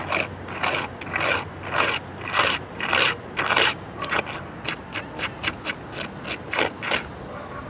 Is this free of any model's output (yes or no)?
yes